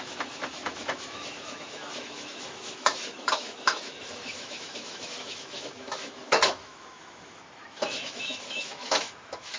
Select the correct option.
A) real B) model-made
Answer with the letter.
B